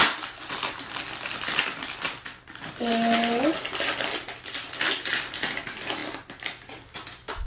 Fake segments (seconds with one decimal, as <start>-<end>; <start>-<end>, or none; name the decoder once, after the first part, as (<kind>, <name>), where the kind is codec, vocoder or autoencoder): none